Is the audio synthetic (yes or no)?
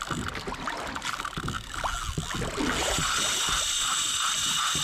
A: no